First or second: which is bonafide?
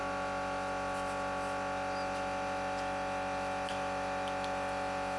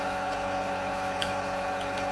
first